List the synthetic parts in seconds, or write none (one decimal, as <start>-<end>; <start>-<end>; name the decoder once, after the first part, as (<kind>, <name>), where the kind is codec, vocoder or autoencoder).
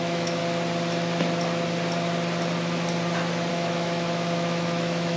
0.0-0.4 (autoencoder, DAC-VAE); 3.5-5.2